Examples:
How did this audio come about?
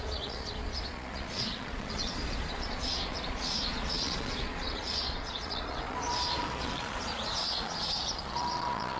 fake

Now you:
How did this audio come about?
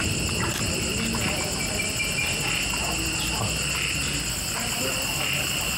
real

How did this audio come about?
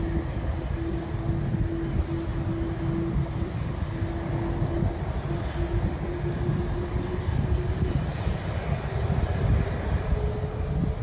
real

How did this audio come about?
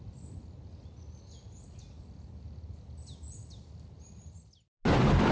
real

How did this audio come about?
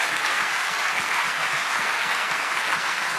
fake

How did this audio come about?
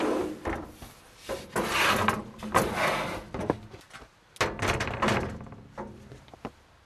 real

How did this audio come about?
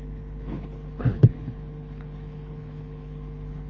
fake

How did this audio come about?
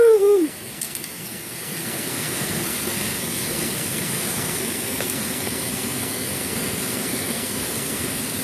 fake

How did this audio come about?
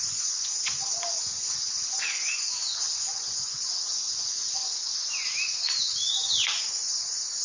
fake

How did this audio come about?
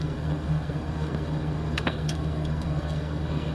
fake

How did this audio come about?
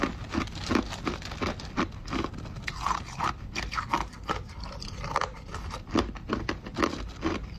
real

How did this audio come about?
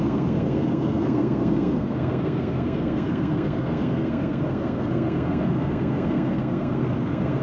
fake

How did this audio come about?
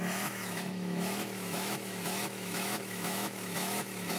fake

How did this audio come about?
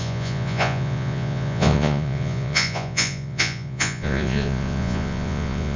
fake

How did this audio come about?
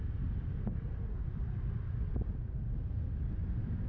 real